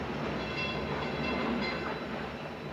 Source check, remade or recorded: recorded